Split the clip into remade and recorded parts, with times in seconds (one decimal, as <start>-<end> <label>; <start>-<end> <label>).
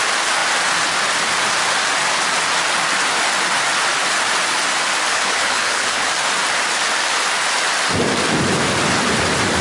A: 0.0-5.1 recorded; 5.1-6.1 remade; 6.1-9.6 recorded